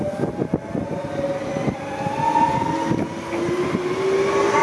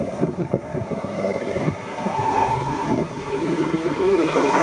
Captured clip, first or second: first